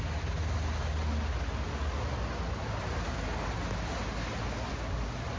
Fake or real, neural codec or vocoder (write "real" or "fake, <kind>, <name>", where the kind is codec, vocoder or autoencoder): real